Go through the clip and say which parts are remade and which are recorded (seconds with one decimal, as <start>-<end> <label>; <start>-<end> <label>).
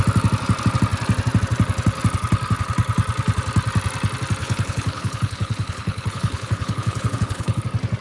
0.0-4.4 recorded; 4.4-7.6 remade; 7.6-8.0 recorded